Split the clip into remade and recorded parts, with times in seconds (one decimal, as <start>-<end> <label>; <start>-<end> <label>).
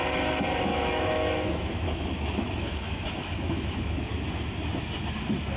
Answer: 0.0-0.7 recorded; 0.7-4.1 remade; 4.1-5.6 recorded